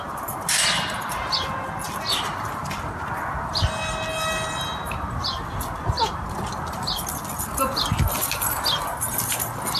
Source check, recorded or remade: recorded